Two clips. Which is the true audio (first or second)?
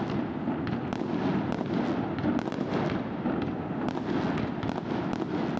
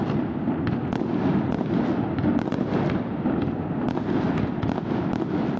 first